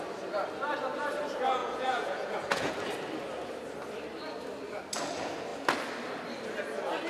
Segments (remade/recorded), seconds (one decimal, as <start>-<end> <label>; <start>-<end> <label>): 0.0-1.6 recorded; 1.6-2.7 remade; 2.7-7.1 recorded